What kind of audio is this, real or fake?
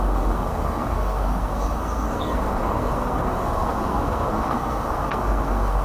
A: fake